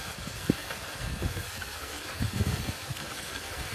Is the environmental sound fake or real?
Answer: fake